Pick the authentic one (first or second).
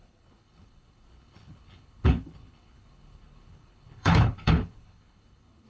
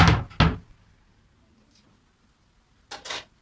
second